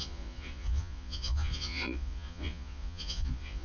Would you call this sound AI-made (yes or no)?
yes